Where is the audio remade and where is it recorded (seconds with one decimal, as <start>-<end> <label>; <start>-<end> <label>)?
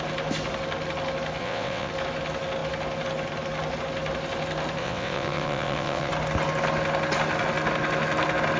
0.0-1.4 recorded; 1.4-1.9 remade; 1.9-4.8 recorded; 4.8-6.1 remade; 6.1-8.6 recorded